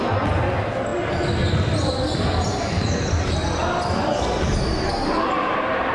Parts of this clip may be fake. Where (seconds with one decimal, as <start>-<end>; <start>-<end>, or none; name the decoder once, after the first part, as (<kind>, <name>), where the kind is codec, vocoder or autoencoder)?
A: none